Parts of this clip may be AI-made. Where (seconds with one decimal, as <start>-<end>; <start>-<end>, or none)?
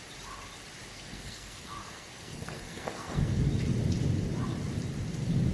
0.9-3.4